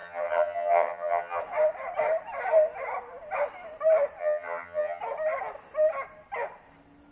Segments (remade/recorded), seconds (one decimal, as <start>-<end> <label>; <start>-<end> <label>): 0.0-1.4 remade; 1.4-4.2 recorded; 4.2-5.0 remade; 5.0-7.1 recorded

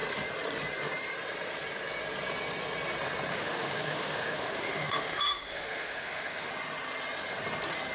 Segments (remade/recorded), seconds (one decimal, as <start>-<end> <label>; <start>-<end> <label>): 0.0-3.3 recorded; 3.3-6.5 remade; 6.5-7.9 recorded

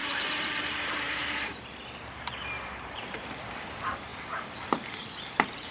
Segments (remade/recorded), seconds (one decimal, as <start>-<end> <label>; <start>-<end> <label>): 0.0-1.2 remade; 1.2-1.8 recorded; 1.8-5.7 remade